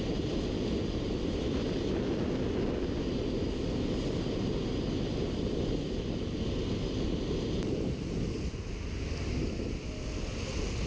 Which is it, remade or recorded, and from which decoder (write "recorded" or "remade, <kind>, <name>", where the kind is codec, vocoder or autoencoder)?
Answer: recorded